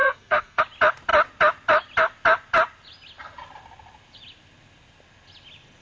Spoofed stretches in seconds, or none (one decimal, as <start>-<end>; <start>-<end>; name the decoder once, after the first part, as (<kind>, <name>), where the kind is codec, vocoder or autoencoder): 0.0-0.6 (codec, SNAC)